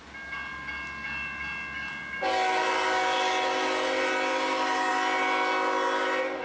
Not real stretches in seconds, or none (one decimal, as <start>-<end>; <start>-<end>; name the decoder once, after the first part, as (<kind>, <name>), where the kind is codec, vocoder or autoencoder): none